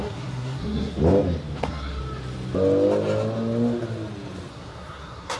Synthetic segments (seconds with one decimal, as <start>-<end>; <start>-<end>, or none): 0.0-1.0; 1.6-2.0; 4.5-5.4